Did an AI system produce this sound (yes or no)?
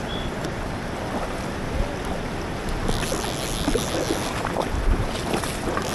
no